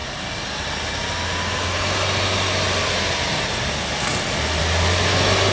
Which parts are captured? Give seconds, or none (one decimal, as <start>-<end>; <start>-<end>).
0.0-5.5